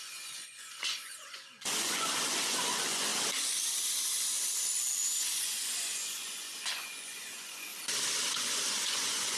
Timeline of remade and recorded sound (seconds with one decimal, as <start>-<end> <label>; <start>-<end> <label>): 0.0-3.1 remade; 3.1-5.0 recorded; 5.0-7.7 remade; 7.7-8.4 recorded; 8.4-9.4 remade